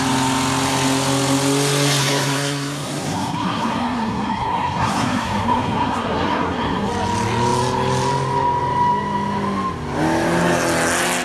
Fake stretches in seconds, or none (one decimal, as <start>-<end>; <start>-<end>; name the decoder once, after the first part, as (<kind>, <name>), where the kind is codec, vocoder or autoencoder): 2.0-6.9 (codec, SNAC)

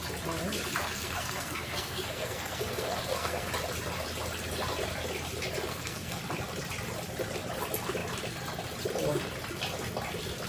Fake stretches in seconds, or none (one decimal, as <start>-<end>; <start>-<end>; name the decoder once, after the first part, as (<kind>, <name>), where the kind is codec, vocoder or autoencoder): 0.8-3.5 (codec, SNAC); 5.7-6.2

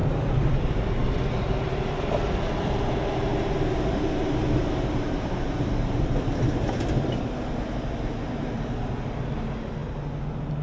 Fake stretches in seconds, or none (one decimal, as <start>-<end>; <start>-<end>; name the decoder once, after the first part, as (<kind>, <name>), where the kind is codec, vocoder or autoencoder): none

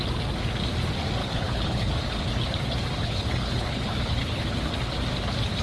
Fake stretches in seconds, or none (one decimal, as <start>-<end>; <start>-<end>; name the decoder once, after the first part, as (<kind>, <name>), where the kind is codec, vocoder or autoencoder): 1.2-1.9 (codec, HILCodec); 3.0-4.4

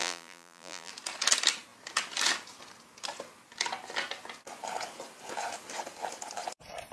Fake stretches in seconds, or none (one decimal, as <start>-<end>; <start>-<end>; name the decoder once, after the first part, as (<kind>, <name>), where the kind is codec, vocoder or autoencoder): 0.0-0.9 (vocoder, BigVGAN v2)

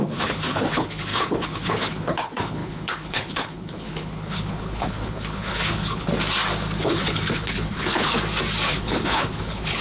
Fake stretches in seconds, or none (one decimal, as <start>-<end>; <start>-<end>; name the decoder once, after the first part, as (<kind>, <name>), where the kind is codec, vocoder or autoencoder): 0.0-6.1 (codec, HILCodec); 6.8-8.1; 8.7-9.8

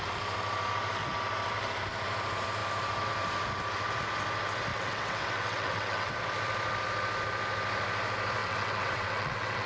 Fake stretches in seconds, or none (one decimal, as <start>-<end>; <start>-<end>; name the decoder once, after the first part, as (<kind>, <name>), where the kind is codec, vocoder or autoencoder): 4.7-6.1 (vocoder, WaveNeXt); 8.4-9.7

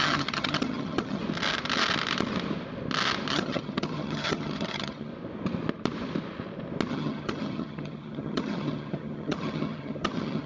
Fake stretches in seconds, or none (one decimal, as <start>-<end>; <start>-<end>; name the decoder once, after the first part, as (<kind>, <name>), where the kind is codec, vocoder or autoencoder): 0.0-1.2 (vocoder, HiFi-GAN); 3.3-5.1; 6.9-10.5